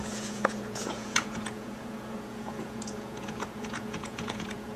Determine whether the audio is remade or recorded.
remade